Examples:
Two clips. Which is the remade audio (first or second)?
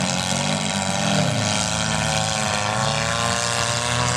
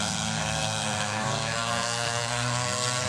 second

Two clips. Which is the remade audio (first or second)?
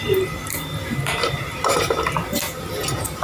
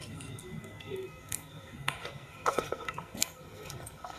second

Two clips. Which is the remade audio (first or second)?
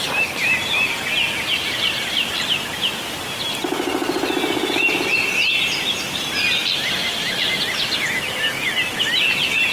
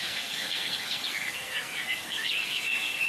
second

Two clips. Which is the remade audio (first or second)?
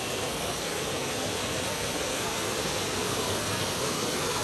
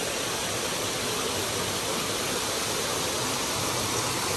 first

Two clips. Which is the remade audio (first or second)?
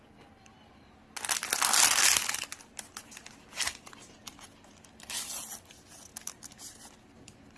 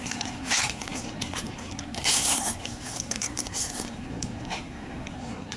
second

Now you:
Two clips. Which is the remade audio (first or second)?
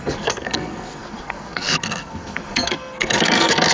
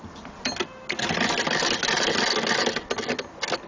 first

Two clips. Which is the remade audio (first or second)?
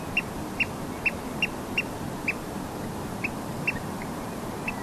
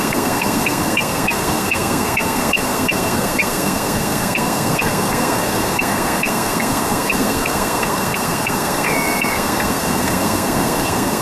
second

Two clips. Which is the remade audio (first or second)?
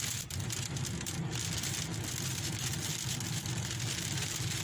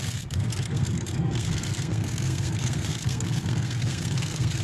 second